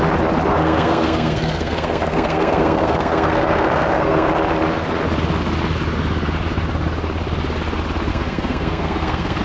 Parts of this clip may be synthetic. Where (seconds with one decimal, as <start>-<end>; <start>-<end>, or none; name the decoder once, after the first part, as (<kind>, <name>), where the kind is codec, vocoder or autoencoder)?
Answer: 0.5-4.3 (codec, SNAC); 8.1-9.4